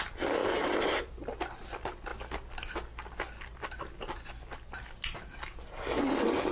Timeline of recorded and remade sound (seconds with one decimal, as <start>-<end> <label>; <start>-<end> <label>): 0.0-2.1 remade; 2.1-6.0 recorded; 6.0-6.5 remade